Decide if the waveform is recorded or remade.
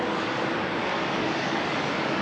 remade